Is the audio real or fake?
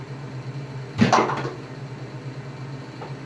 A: real